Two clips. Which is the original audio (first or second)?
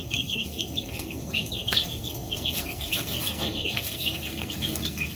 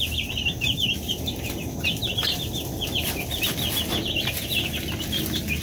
second